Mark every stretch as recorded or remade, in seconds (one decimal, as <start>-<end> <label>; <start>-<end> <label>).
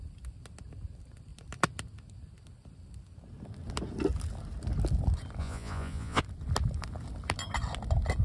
0.0-5.4 recorded; 5.4-6.2 remade; 6.2-8.2 recorded